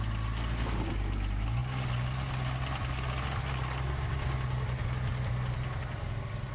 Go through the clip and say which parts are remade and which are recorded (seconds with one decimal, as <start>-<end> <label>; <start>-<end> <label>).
0.0-6.5 recorded